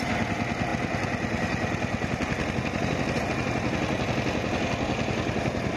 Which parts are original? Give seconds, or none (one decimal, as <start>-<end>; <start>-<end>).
0.0-5.8